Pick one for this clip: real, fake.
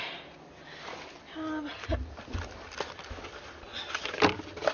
real